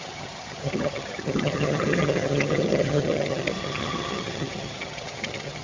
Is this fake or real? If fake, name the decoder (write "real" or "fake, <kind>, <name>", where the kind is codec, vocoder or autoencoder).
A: fake, vocoder, HiFi-GAN